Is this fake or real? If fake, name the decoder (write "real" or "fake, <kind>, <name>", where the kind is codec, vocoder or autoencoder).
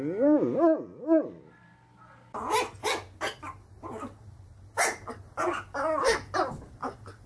real